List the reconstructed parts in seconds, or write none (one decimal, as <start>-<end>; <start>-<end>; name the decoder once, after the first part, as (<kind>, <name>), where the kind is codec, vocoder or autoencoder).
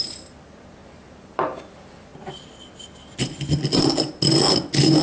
0.8-1.4 (vocoder, BigVGAN v2)